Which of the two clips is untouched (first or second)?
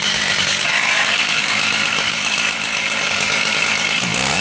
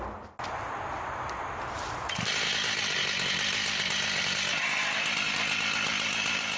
second